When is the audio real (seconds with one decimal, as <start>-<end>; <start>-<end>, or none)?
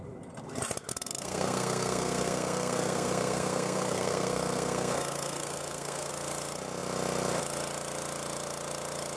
0.0-0.9; 6.1-9.2